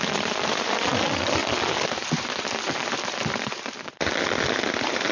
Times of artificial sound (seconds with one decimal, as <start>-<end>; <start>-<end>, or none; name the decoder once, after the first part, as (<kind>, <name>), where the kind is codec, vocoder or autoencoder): none